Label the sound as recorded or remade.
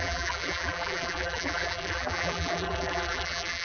remade